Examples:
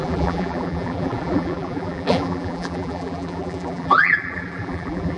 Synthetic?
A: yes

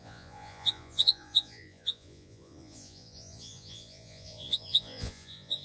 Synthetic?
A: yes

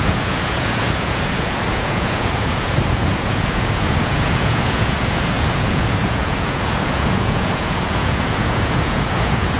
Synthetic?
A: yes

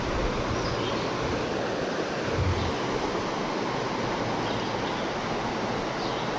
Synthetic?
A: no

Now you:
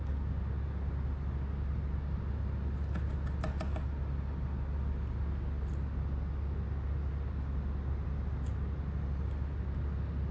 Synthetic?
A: no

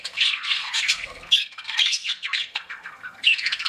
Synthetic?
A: yes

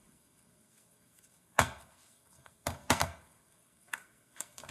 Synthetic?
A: yes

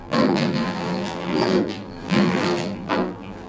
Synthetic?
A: yes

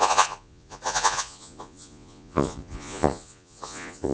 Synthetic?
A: yes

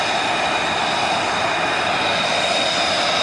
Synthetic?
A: no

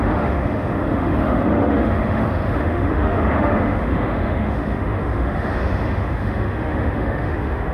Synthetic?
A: yes